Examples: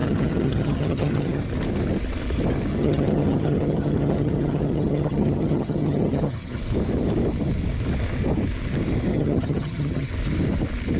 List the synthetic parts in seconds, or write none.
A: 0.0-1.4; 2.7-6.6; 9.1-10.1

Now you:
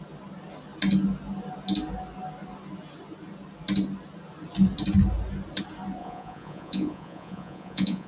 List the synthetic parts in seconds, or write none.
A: 6.0-8.1

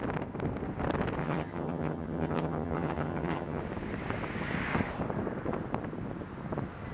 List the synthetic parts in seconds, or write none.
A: 1.2-3.6

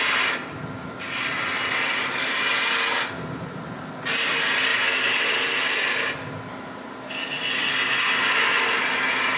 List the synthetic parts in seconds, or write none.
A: none